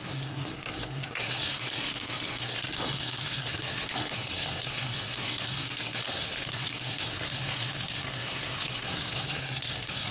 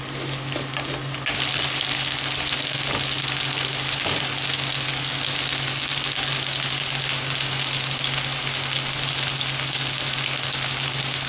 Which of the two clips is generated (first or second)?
first